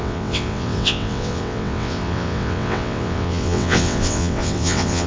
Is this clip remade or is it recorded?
remade